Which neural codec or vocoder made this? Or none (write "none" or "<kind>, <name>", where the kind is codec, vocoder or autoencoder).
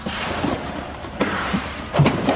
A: vocoder, BigVGAN v2